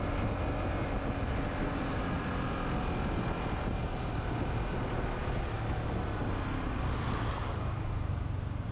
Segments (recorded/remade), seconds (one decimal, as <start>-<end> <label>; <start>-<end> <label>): 0.0-8.7 recorded